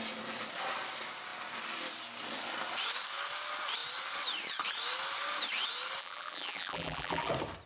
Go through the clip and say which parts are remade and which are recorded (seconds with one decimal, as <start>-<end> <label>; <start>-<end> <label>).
0.0-6.0 recorded; 6.0-7.3 remade; 7.3-7.7 recorded